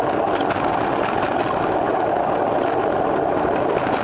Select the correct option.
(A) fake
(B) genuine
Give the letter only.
B